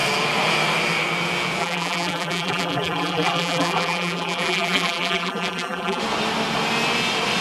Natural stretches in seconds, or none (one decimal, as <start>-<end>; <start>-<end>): 0.0-1.6; 6.0-7.4